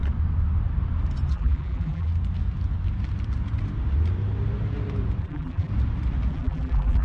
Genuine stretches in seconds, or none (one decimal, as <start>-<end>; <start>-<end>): 0.0-1.3; 2.1-5.2; 5.7-6.3